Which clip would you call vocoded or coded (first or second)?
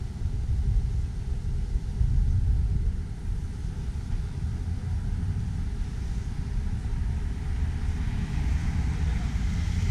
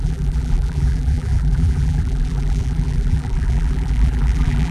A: second